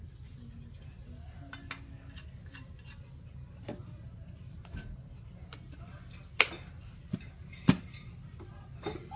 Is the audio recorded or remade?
recorded